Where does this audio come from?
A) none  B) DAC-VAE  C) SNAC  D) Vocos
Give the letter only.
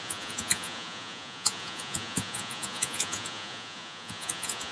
D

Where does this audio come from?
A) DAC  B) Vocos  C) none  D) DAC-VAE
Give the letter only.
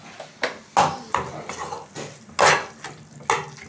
C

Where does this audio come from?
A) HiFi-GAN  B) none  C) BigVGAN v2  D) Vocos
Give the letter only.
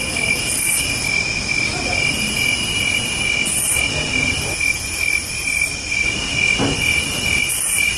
B